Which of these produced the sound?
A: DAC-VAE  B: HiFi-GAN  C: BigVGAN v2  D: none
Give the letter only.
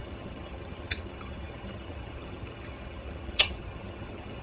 B